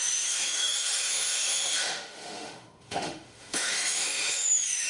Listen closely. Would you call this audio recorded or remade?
remade